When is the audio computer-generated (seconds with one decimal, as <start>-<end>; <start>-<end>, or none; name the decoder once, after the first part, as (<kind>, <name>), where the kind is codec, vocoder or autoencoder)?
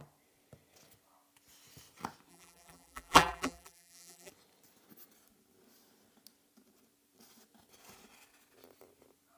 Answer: 2.3-4.3 (vocoder, BigVGAN v2)